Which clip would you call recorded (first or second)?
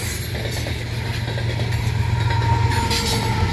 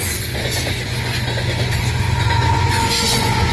first